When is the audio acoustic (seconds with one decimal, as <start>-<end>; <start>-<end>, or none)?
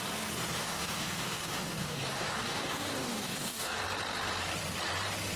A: 0.0-0.6; 3.8-5.4